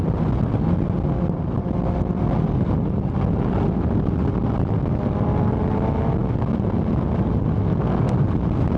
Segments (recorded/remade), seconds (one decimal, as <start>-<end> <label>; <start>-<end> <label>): 0.0-8.8 recorded